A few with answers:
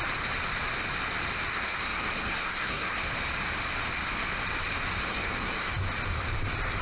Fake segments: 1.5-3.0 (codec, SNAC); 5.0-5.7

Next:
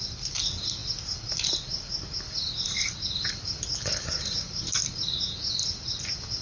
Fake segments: none

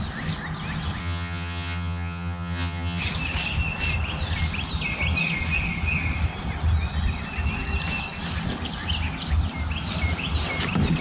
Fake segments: 1.0-3.0 (vocoder, HiFi-GAN)

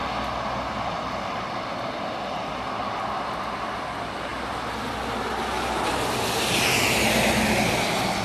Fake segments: 4.3-5.9 (vocoder, BigVGAN v2)

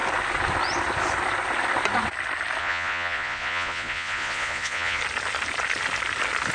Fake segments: 2.6-5.0 (vocoder, Vocos)

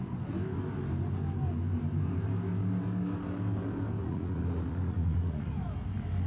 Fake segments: 4.0-5.5 (vocoder, Vocos)